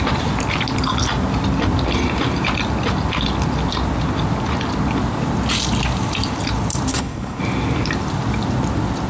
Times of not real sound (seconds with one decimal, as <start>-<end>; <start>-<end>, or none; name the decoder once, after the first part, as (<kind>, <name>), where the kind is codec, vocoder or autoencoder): 6.9-7.4 (codec, HILCodec)

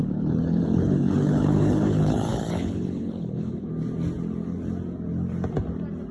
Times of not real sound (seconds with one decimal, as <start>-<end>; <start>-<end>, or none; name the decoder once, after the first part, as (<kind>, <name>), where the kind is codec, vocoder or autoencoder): 0.0-3.7 (codec, HILCodec)

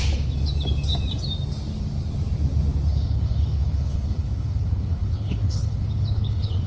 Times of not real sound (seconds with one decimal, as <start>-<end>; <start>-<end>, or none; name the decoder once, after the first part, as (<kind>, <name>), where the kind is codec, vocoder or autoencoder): 2.9-6.7 (codec, HILCodec)

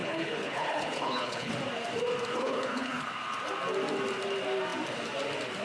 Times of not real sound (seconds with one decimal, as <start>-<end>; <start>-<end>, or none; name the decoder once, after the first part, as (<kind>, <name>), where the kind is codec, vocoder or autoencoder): 0.0-1.5 (codec, HILCodec); 2.3-3.1